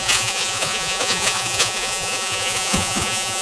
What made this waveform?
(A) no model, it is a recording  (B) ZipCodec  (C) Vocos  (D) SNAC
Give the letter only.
C